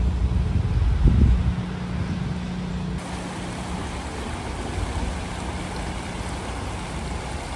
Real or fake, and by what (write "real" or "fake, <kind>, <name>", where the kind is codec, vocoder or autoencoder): real